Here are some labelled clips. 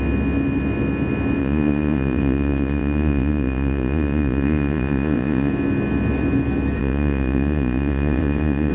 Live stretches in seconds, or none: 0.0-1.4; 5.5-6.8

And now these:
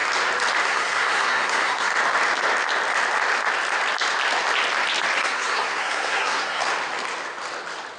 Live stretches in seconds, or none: 0.0-0.6; 1.9-5.2; 6.7-8.0

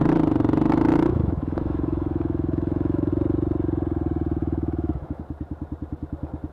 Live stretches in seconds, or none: 0.0-0.9; 3.1-4.4; 5.2-6.5

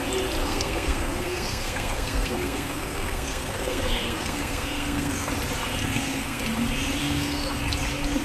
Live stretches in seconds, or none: 0.0-0.4; 5.3-5.8; 6.4-7.0; 7.6-8.2

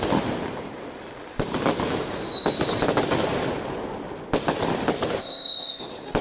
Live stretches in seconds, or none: 0.0-5.2; 5.8-6.2

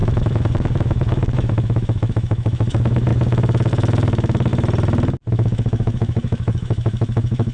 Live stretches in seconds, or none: 4.5-5.3